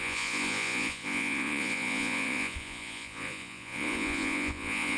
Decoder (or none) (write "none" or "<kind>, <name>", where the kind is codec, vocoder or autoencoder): vocoder, Vocos